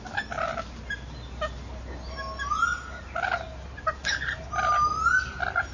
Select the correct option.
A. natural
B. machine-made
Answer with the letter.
A